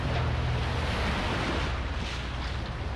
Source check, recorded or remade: recorded